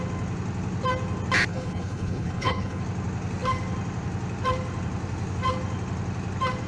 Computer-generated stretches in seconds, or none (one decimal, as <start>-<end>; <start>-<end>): 1.5-2.8